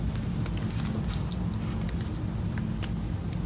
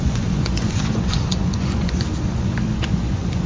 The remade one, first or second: second